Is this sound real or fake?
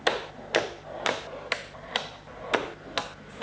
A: real